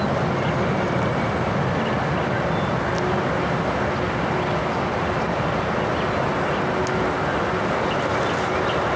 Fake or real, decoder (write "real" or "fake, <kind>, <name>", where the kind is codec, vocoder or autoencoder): real